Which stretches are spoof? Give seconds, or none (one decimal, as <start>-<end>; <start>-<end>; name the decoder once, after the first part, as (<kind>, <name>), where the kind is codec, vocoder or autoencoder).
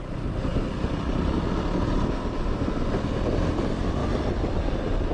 none